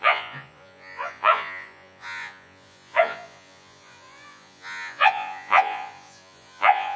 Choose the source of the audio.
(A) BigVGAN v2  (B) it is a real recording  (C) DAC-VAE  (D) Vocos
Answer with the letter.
D